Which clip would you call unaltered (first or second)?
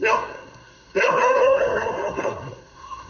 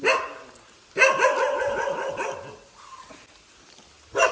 second